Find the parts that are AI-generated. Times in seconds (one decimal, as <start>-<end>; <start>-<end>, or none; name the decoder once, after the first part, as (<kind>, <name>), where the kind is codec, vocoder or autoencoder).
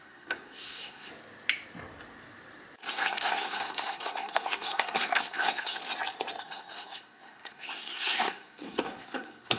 0.0-1.1 (codec, SNAC); 2.9-5.8; 6.4-9.6